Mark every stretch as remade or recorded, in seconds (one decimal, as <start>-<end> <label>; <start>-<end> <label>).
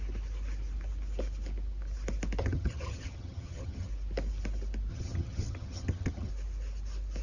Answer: 0.0-2.4 recorded; 2.4-3.9 remade; 3.9-4.9 recorded; 4.9-6.3 remade; 6.3-7.2 recorded